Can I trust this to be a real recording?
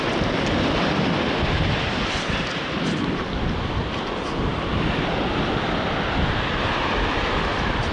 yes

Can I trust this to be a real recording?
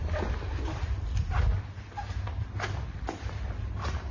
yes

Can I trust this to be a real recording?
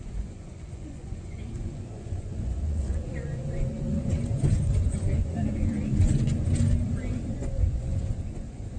no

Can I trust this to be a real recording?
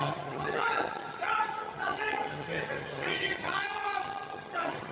no